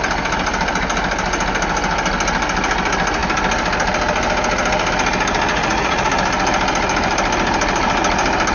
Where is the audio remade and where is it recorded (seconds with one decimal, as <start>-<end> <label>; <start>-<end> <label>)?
0.0-5.5 recorded; 5.5-6.1 remade; 6.1-8.5 recorded